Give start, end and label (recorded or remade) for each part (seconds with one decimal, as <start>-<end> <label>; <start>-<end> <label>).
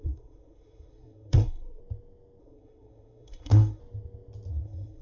0.0-1.8 remade; 1.8-2.4 recorded; 2.4-3.8 remade; 3.8-4.5 recorded; 4.5-5.0 remade